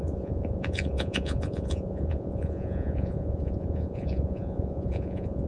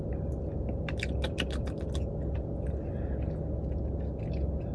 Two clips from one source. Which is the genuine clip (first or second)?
second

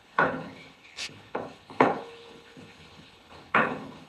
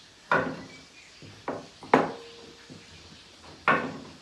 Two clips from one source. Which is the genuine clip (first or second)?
second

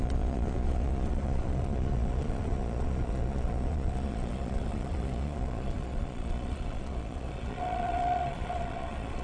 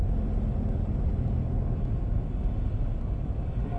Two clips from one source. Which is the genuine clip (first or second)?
second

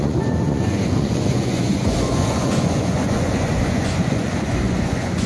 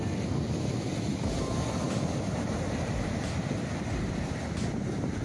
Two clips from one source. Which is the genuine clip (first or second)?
second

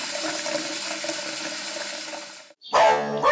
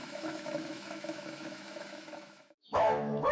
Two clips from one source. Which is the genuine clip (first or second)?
first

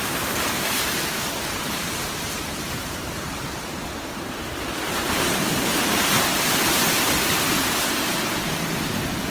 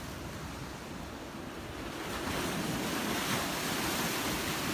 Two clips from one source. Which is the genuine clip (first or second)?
second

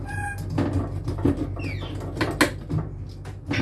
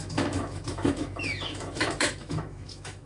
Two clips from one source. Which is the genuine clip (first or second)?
first